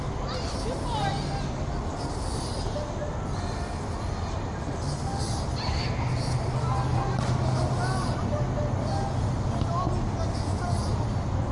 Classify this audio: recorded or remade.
recorded